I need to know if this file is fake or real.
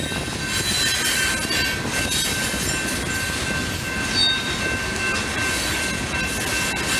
real